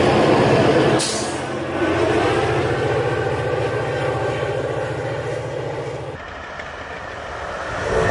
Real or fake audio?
real